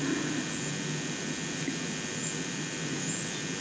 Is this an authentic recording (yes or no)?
yes